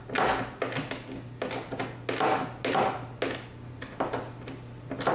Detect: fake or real real